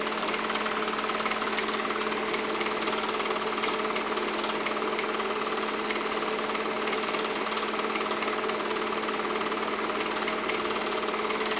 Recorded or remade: recorded